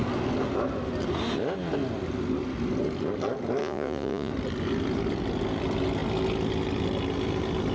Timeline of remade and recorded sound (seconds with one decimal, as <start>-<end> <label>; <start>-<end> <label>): 0.0-3.6 recorded; 3.6-4.3 remade; 4.3-7.7 recorded